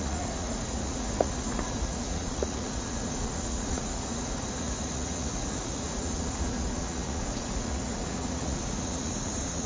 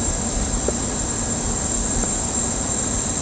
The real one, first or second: second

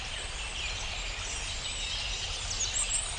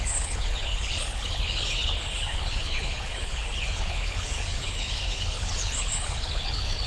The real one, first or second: first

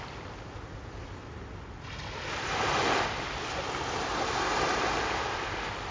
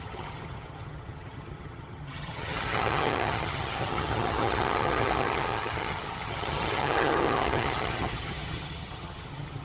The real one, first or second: first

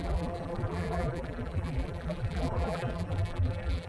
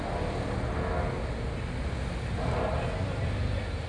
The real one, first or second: second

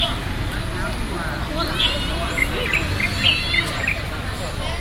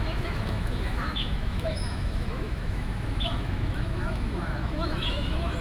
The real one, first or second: first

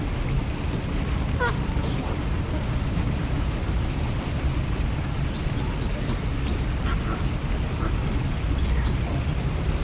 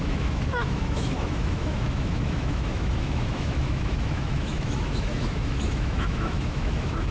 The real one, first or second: first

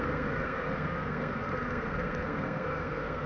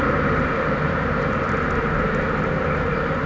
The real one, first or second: second